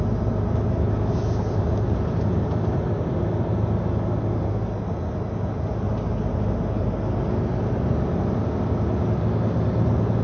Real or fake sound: real